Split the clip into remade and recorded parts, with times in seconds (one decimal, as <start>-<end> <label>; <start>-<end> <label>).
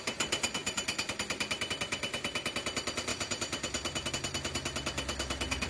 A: 0.0-3.1 recorded; 3.1-4.1 remade; 4.1-5.7 recorded